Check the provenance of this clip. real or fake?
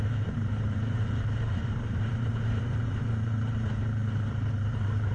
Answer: fake